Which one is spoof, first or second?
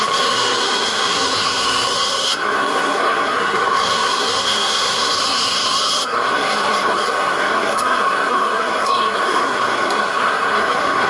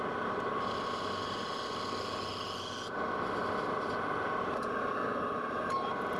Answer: first